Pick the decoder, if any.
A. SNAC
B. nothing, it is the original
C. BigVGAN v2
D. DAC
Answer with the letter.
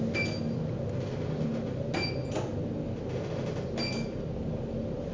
B